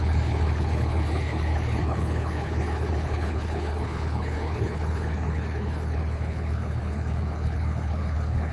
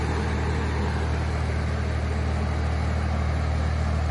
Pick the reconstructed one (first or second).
first